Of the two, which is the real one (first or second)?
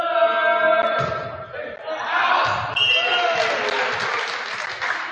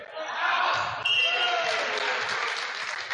first